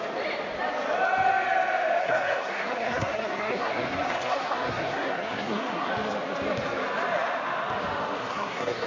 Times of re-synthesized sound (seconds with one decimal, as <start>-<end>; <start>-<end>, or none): 2.0-5.9; 8.2-8.9